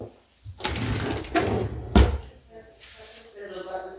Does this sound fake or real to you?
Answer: real